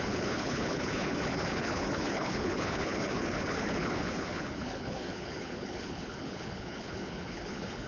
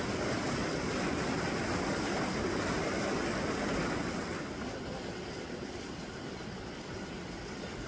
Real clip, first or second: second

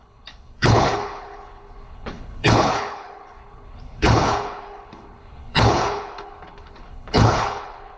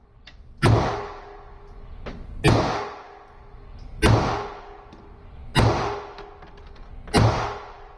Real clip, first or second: second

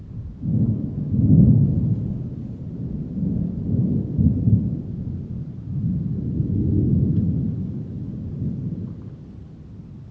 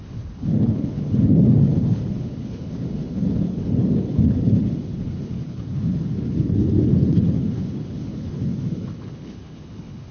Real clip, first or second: first